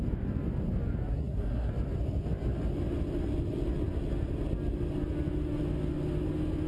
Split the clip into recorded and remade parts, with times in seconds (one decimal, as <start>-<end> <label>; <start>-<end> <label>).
0.0-1.1 recorded; 1.1-1.7 remade; 1.7-6.7 recorded